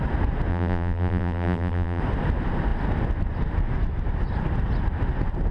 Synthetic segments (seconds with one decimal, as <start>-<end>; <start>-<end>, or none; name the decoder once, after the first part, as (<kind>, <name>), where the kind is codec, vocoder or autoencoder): 0.5-2.0 (vocoder, BigVGAN v2)